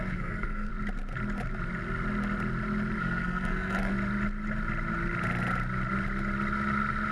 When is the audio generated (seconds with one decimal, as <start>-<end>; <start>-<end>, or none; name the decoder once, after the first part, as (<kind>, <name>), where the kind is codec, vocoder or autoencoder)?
0.0-0.7 (codec, SNAC); 3.0-3.9